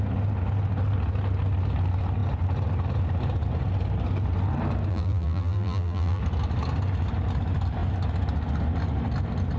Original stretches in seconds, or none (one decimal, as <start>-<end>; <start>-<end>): 0.0-4.9; 6.2-9.6